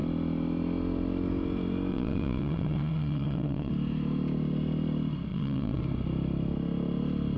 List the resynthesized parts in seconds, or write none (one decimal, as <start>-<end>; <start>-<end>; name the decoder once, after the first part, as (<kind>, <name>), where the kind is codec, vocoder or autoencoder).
1.9-3.7 (vocoder, WaveNeXt); 5.3-5.8